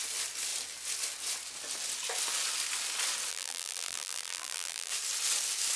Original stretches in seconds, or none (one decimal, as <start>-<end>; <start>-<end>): 0.0-3.3; 4.9-5.8